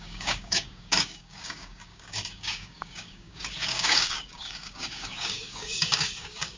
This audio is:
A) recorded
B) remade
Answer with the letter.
B